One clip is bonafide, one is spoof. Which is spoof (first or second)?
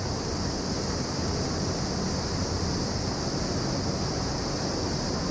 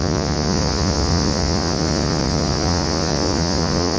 second